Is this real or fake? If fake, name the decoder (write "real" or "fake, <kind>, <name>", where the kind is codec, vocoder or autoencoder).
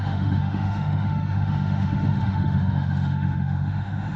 fake, autoencoder, DAC-VAE